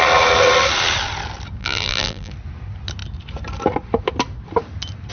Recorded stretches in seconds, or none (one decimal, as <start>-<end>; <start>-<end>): 0.0-1.6; 2.3-5.1